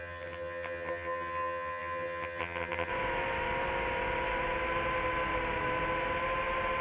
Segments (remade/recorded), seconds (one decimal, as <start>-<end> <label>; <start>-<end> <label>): 0.0-2.9 remade; 2.9-6.8 recorded